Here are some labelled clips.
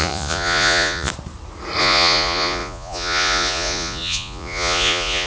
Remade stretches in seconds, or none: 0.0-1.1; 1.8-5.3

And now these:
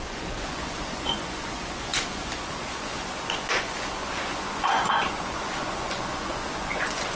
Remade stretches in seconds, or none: 0.0-7.2